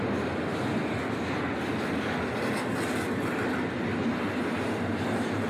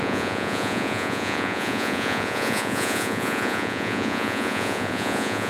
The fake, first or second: second